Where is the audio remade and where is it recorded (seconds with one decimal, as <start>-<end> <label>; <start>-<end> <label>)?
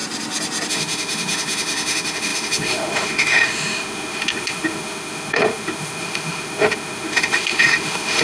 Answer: 0.0-0.7 recorded; 0.7-8.2 remade